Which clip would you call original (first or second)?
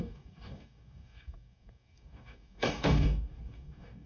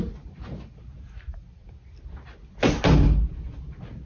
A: second